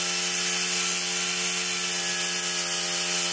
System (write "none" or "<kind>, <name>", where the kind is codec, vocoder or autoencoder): none